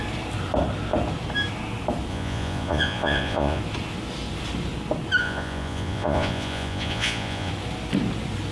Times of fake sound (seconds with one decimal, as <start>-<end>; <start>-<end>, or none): 2.1-3.6; 5.2-7.5